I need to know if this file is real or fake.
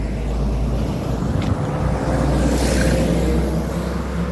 real